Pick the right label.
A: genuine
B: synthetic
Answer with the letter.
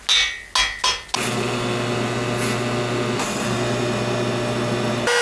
A